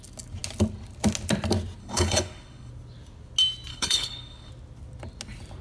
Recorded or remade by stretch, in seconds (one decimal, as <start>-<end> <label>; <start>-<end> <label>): 0.0-1.8 recorded; 1.8-2.7 remade; 2.7-3.7 recorded; 3.7-4.5 remade; 4.5-5.6 recorded